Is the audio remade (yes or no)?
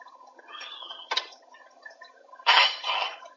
yes